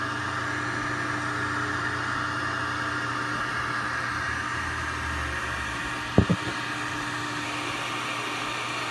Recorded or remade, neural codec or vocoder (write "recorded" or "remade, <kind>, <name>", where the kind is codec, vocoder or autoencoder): recorded